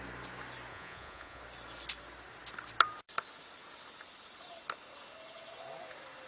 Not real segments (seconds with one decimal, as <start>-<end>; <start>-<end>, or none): 0.7-1.4

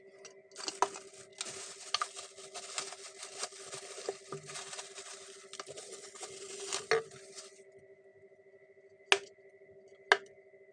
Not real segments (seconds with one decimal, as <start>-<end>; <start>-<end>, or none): none

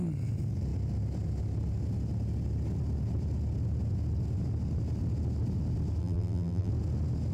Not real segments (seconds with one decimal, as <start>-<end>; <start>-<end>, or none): 6.0-6.7

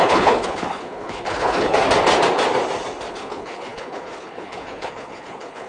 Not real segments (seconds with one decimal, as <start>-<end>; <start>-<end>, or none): 0.0-1.8; 3.1-5.7

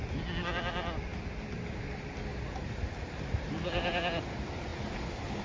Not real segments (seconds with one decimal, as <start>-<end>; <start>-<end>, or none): none

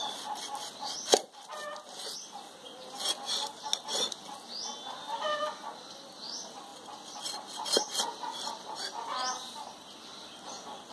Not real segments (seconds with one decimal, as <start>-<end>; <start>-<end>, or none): none

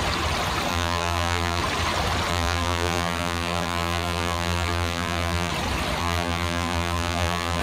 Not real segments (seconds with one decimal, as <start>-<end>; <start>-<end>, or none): 0.7-1.6; 2.3-5.5; 6.0-7.6